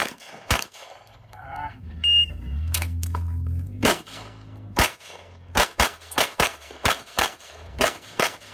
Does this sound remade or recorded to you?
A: remade